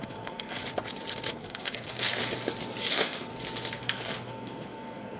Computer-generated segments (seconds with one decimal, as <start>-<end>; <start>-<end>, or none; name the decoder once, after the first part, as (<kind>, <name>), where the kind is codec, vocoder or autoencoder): 0.0-0.6 (codec, SNAC); 1.3-2.2; 2.9-3.3; 3.8-5.2